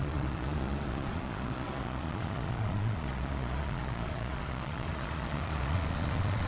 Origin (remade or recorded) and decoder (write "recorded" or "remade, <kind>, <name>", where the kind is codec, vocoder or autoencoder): remade, vocoder, Vocos